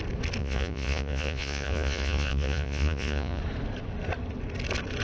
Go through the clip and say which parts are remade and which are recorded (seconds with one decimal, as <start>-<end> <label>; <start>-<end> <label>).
0.0-0.4 recorded; 0.4-3.4 remade; 3.4-5.0 recorded

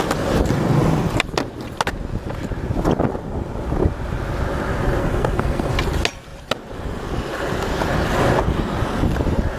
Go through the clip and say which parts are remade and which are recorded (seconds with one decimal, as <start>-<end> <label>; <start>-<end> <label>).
0.0-5.0 recorded; 5.0-5.7 remade; 5.7-9.6 recorded